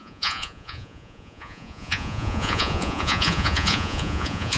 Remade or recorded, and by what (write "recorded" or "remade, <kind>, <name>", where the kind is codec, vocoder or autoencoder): remade, vocoder, Vocos